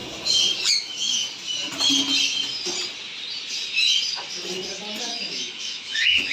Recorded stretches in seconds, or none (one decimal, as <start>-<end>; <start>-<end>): 0.0-0.7; 1.2-5.0